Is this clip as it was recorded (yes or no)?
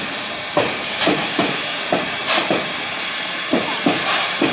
no